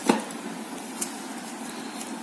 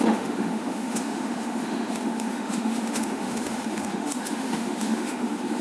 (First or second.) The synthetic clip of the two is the second